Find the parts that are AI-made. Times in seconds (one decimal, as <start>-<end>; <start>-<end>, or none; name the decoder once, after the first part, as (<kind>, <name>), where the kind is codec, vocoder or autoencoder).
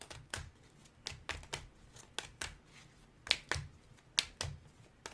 none